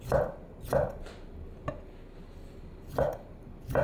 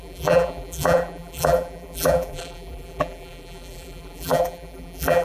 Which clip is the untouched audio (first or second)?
first